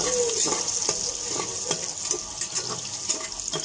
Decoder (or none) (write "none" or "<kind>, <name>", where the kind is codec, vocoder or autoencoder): none